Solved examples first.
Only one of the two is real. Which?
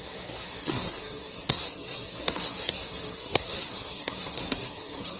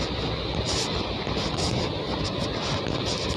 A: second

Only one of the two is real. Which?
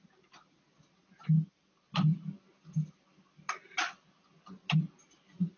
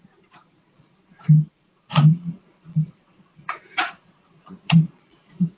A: first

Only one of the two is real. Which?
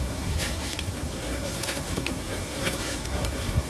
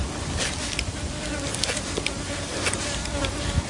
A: second